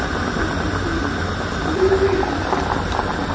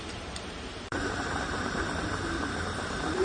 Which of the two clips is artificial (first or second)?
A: second